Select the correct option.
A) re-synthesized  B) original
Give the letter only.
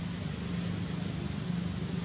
B